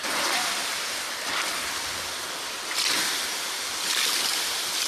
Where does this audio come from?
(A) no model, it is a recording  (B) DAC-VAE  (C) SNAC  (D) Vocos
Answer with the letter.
A